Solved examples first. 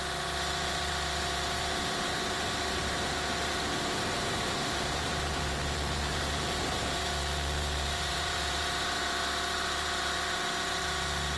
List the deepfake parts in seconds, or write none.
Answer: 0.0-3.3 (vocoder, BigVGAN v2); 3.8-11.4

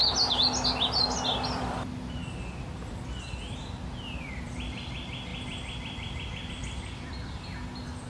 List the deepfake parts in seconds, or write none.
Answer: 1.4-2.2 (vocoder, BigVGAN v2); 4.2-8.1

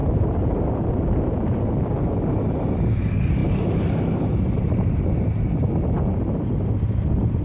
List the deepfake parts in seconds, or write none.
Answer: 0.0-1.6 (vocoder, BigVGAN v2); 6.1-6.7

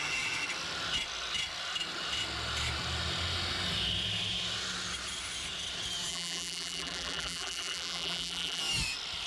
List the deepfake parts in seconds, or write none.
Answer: 6.1-8.6 (vocoder, BigVGAN v2)

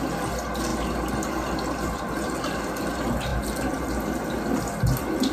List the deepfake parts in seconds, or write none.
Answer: none

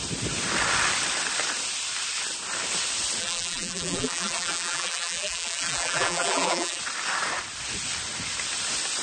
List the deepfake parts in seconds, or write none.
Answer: 3.2-6.8 (vocoder, BigVGAN v2)

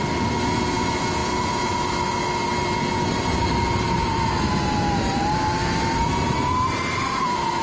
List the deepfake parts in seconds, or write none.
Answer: 3.1-7.6 (vocoder, BigVGAN v2)